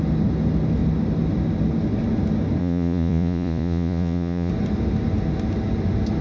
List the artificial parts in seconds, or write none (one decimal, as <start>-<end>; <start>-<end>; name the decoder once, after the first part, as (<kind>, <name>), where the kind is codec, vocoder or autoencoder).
2.6-4.5 (vocoder, Vocos)